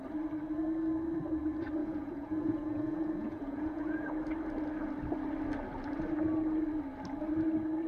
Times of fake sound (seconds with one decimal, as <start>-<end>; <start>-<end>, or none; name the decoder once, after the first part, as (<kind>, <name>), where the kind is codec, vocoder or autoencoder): 1.8-4.1 (vocoder, Vocos)